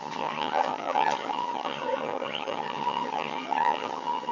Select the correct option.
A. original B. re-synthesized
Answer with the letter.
B